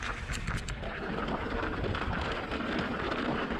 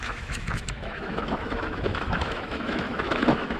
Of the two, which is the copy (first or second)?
second